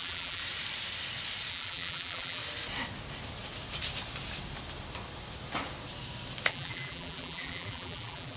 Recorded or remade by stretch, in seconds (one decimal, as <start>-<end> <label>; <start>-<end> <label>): 0.0-0.4 remade; 0.4-1.5 recorded; 1.5-2.4 remade; 2.4-6.5 recorded; 6.5-8.4 remade